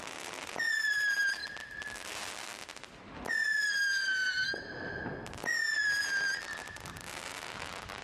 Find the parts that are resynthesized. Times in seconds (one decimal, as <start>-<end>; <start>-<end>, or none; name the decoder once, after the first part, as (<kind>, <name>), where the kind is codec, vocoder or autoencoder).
none